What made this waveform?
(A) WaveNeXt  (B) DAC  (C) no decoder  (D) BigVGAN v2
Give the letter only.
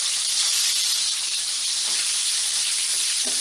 D